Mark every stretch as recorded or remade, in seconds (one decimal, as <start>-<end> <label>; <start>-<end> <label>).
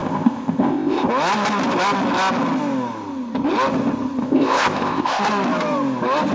0.0-1.1 remade; 1.1-4.2 recorded; 4.2-5.2 remade; 5.2-6.3 recorded